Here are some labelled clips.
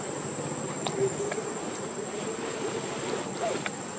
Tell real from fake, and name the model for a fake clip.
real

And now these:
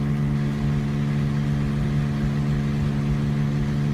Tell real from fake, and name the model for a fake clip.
real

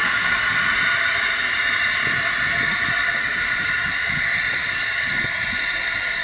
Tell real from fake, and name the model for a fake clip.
real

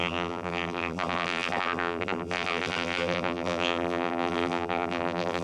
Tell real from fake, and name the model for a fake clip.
fake, vocoder, BigVGAN v2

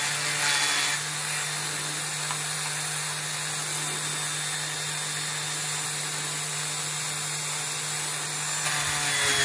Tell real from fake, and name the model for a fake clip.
real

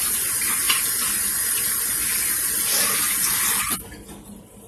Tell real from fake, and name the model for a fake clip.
real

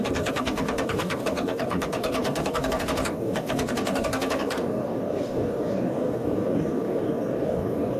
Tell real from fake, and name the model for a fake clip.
fake, codec, DAC